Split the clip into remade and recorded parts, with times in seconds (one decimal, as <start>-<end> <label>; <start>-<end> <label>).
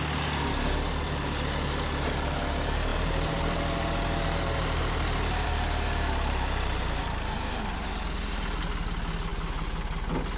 0.0-2.9 recorded; 2.9-7.9 remade; 7.9-10.4 recorded